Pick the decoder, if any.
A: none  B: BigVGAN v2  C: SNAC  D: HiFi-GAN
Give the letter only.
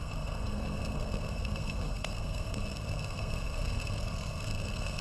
C